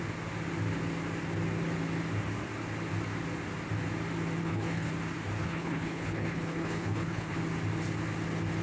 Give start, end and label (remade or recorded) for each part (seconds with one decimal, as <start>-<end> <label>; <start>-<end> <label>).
0.0-4.4 recorded; 4.4-4.9 remade; 4.9-5.4 recorded; 5.4-7.4 remade; 7.4-8.6 recorded